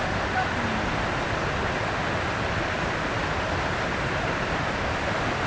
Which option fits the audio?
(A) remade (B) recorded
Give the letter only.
B